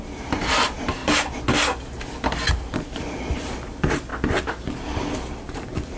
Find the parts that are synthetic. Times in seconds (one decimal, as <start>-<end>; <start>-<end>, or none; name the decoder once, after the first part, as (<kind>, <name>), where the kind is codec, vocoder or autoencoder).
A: 0.0-1.0 (vocoder, BigVGAN v2); 2.5-4.1; 5.4-6.0